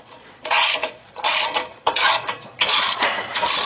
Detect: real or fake fake